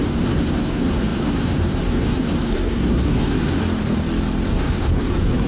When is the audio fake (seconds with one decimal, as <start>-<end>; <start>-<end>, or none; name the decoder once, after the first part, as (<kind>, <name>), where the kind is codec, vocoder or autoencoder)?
0.0-3.6 (codec, SNAC); 4.5-5.5